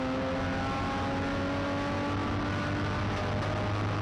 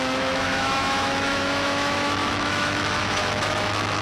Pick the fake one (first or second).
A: second